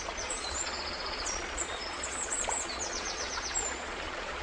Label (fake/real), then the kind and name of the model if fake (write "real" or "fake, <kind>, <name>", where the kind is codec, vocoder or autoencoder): fake, vocoder, Vocos